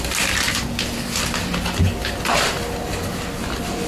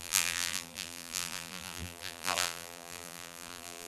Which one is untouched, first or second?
first